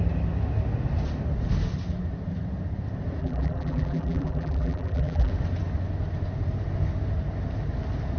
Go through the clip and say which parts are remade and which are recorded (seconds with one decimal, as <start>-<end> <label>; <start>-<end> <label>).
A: 0.0-3.2 recorded; 3.2-5.3 remade; 5.3-8.2 recorded